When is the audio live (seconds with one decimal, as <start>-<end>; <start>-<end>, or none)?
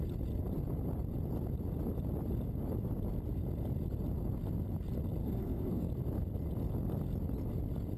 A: 0.0-5.2; 5.9-8.0